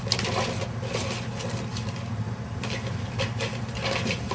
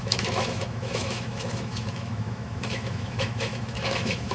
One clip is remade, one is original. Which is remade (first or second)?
second